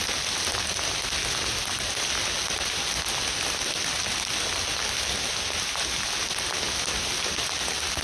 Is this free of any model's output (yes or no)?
yes